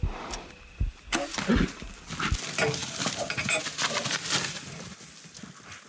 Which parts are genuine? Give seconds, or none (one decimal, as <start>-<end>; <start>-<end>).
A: 0.0-5.9